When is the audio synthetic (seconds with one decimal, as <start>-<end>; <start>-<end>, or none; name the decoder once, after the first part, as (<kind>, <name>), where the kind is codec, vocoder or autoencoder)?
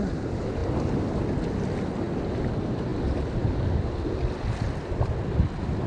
none